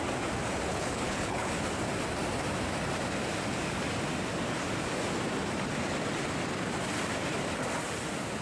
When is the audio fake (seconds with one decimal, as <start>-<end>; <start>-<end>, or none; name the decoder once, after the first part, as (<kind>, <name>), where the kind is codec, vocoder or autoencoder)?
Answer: 0.7-1.5 (codec, HILCodec)